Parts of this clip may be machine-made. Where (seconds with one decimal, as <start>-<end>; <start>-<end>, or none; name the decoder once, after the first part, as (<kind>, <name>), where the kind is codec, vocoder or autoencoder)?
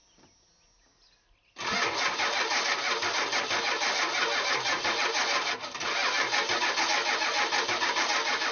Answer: none